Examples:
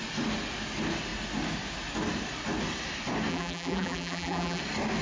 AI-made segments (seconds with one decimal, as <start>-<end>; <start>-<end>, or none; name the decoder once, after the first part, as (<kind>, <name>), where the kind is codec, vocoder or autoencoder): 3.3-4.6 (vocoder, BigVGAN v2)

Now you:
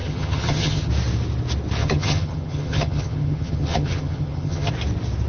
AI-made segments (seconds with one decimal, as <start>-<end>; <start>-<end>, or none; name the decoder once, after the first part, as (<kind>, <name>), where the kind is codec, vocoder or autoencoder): 0.0-0.9 (vocoder, HiFi-GAN); 1.8-4.7

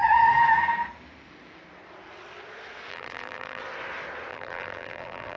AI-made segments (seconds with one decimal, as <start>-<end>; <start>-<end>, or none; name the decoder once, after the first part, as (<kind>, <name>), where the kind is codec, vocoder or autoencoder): 2.9-3.6 (vocoder, BigVGAN v2); 4.3-5.4

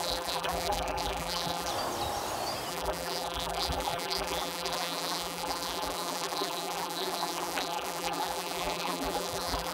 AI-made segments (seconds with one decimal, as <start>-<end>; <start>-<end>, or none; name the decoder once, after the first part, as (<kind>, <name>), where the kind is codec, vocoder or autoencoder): 0.0-1.7 (vocoder, BigVGAN v2); 2.7-9.7